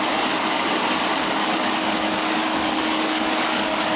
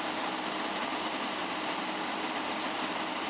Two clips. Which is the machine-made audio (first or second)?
first